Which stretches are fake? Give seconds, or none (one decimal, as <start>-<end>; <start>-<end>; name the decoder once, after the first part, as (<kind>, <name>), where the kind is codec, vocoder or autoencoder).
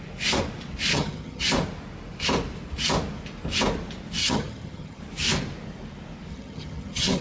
0.9-1.4 (vocoder, HiFi-GAN); 4.2-5.0; 6.3-7.2